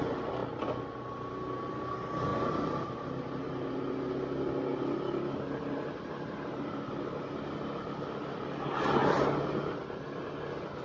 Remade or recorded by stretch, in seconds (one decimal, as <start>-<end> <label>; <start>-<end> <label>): 0.0-2.3 recorded; 2.3-3.7 remade; 3.7-4.7 recorded; 4.7-9.8 remade; 9.8-10.8 recorded